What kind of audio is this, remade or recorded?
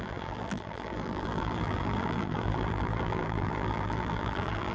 remade